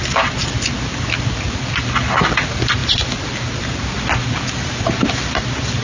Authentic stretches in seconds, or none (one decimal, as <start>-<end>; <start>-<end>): 0.0-5.8